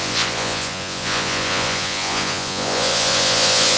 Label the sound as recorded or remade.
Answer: remade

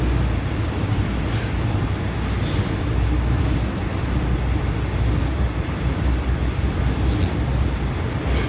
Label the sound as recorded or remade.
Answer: recorded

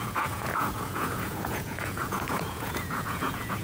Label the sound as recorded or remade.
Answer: remade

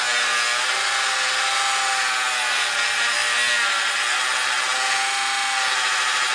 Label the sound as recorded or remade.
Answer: recorded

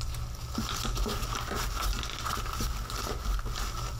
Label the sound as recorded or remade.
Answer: recorded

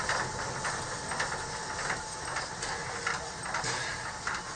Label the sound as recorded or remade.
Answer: recorded